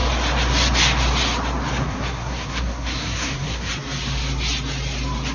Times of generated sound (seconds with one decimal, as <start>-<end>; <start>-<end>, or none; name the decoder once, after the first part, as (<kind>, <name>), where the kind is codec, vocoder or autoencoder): 1.8-3.7 (codec, SNAC)